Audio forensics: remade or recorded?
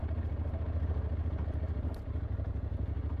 recorded